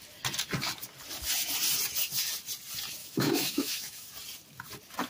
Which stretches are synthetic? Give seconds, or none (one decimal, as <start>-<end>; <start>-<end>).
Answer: 3.0-4.1